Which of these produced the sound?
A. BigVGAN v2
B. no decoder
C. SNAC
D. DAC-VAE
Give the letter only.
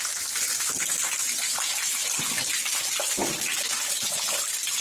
B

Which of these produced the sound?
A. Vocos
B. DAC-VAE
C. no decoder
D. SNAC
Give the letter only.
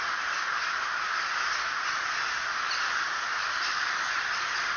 C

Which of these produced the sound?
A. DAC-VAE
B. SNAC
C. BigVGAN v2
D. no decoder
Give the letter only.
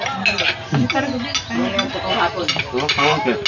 D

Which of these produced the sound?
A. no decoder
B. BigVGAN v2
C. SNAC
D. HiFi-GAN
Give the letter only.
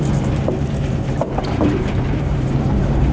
B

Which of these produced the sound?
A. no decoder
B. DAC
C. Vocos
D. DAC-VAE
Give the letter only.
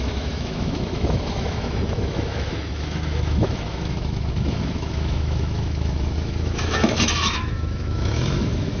D